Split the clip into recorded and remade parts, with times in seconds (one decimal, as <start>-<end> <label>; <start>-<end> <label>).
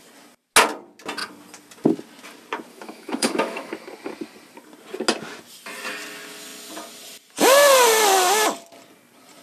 0.0-2.7 recorded; 2.7-3.7 remade; 3.7-9.4 recorded